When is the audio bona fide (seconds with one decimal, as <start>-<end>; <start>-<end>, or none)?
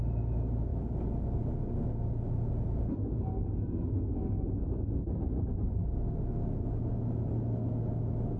0.0-8.4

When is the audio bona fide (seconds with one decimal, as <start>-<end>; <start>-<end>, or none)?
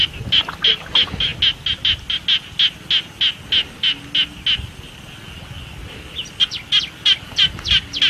0.0-8.1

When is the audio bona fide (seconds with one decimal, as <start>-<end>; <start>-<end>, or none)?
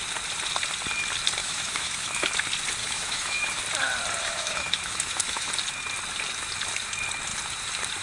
0.0-1.4; 2.3-2.8; 3.6-4.2; 5.5-8.0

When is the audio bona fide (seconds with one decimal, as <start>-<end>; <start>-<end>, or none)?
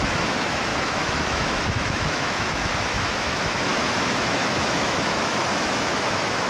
none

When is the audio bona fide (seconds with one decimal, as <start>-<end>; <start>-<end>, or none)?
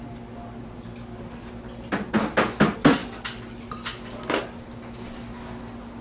0.0-6.0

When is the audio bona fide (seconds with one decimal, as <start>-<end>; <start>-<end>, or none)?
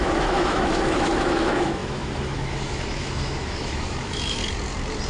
4.4-5.1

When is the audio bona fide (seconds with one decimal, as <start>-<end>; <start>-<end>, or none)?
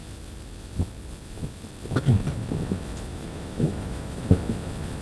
0.0-3.1; 4.2-5.0